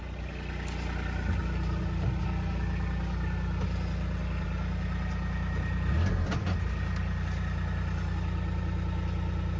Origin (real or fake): real